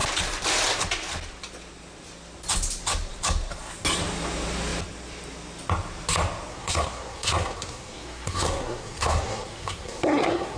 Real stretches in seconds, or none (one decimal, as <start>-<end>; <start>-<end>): 0.0-6.5